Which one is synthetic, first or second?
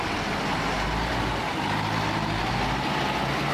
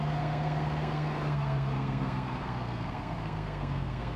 second